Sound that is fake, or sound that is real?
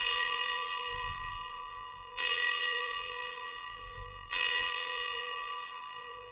fake